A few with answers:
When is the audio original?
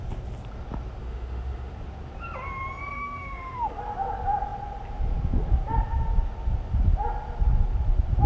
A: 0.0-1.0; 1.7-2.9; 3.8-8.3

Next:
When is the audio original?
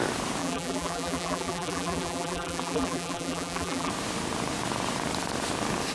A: 0.0-0.4; 3.9-5.9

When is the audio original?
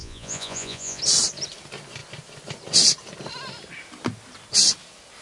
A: 1.0-5.2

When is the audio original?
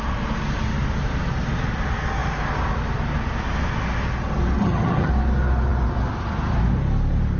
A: 0.0-4.6; 5.1-7.4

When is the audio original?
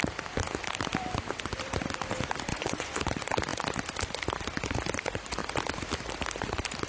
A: 0.0-2.5; 3.0-6.9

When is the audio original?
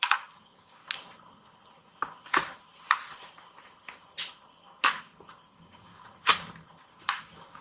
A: 0.8-5.4; 5.9-6.9